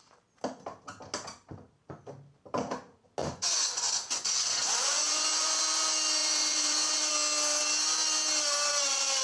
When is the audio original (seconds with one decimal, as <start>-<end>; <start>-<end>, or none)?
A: 0.0-3.2; 5.6-6.2; 7.1-9.2

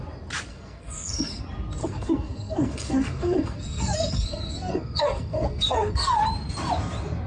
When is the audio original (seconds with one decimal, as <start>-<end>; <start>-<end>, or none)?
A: 0.0-0.5; 1.4-1.8; 6.2-7.3

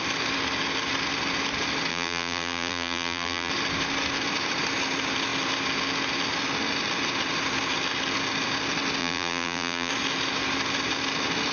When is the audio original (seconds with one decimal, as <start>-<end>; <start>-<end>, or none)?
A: 0.0-1.9; 3.5-9.0; 9.9-11.5

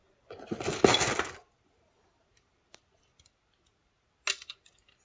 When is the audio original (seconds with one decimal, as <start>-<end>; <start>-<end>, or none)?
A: 0.0-5.0